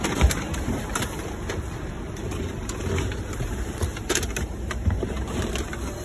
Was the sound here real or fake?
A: fake